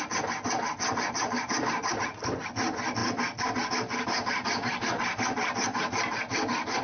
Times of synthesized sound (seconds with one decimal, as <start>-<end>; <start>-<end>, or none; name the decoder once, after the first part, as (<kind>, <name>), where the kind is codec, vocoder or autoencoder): none